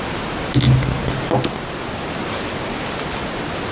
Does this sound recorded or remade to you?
recorded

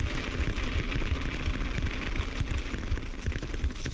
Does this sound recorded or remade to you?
recorded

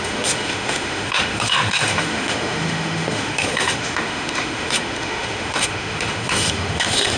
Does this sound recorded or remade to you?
remade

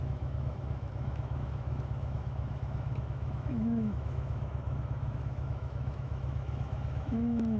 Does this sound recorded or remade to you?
remade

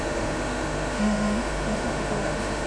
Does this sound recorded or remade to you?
remade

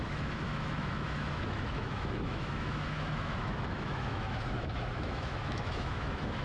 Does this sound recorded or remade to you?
remade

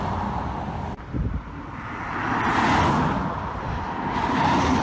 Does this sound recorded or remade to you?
recorded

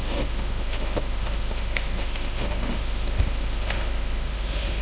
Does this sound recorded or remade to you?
remade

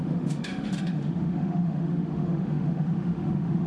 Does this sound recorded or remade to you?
remade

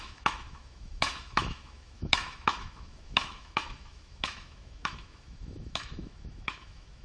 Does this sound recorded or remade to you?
remade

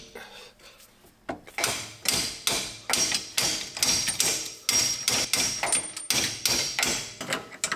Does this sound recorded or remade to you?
recorded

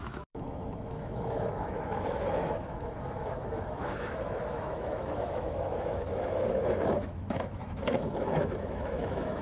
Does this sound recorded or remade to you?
remade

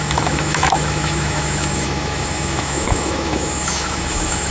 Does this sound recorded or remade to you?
remade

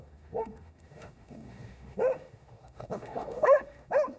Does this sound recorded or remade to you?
remade